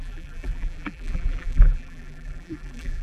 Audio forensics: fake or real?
fake